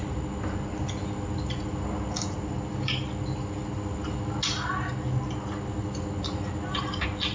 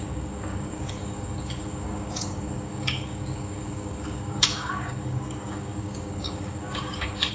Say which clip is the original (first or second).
first